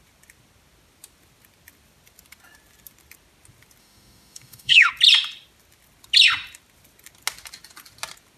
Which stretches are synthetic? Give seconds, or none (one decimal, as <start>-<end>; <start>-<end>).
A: 3.8-4.9